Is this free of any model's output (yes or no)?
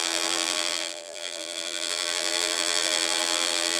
no